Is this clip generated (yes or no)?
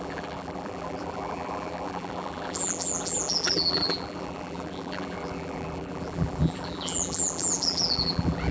yes